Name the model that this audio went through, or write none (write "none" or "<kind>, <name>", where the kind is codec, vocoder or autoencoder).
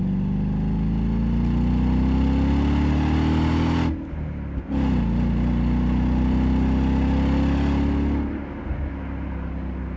none